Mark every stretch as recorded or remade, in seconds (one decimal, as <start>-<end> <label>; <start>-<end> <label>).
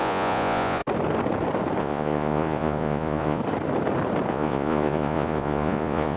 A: 0.0-0.8 remade; 0.8-1.8 recorded; 1.8-3.4 remade; 3.4-4.3 recorded; 4.3-6.2 remade